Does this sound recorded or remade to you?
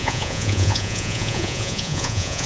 remade